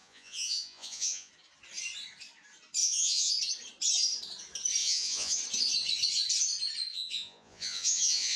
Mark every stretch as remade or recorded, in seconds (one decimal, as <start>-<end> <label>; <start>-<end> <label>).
0.0-1.3 remade; 1.3-2.8 recorded; 2.8-3.3 remade; 3.3-4.8 recorded; 4.8-5.4 remade; 5.4-6.9 recorded; 6.9-8.4 remade